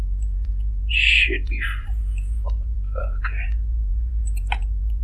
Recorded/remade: remade